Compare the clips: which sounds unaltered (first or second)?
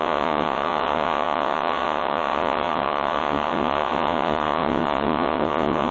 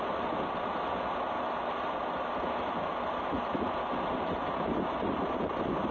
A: second